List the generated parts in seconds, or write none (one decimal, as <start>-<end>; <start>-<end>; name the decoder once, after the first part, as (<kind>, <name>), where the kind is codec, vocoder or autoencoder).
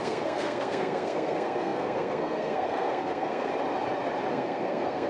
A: 0.0-3.5 (codec, SNAC); 4.3-5.1